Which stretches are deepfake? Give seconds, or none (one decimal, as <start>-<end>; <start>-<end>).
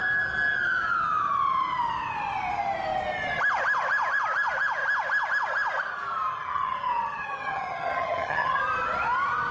6.3-8.6